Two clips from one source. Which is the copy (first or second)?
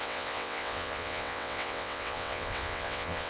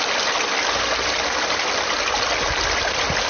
first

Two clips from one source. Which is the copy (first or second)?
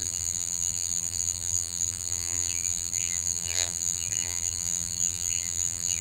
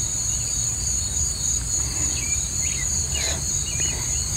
first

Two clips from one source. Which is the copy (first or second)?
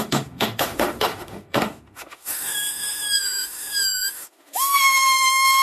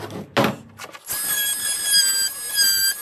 first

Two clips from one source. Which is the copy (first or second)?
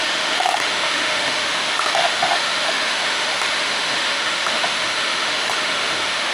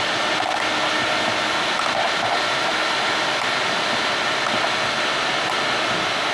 first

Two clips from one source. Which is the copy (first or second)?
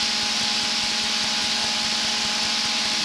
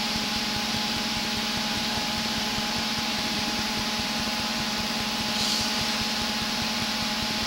second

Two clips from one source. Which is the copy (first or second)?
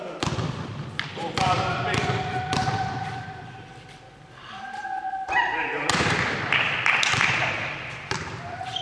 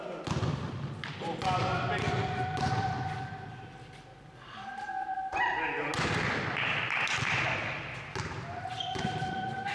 first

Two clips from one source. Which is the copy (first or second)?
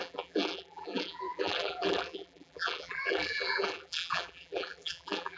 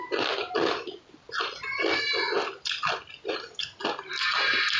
first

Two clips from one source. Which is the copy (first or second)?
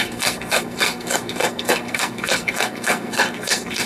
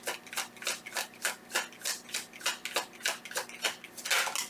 first